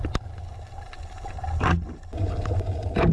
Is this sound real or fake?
real